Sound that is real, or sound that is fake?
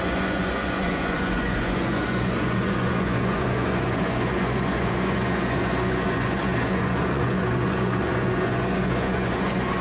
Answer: fake